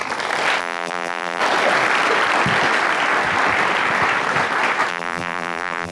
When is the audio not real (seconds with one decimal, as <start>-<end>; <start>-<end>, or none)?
0.6-1.4; 4.9-5.9